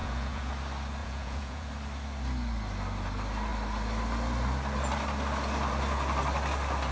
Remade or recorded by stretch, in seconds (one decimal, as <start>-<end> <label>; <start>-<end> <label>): 0.0-0.5 remade; 0.5-1.0 recorded; 1.0-1.7 remade; 1.7-6.9 recorded